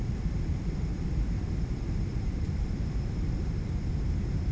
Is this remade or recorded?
remade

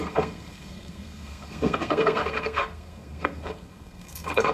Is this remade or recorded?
remade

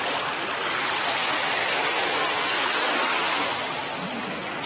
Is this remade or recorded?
recorded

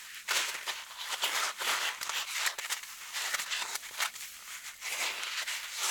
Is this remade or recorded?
remade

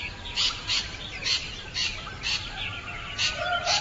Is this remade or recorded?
remade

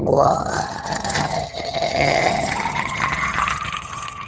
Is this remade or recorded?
remade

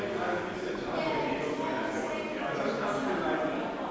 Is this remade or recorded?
recorded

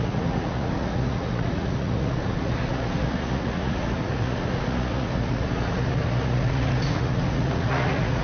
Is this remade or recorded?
remade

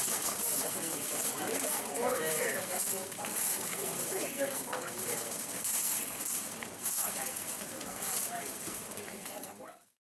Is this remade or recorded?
remade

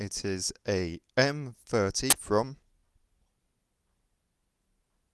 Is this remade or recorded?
recorded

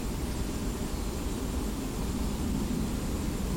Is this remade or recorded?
recorded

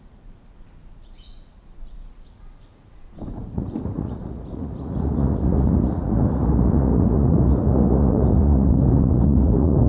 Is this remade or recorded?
remade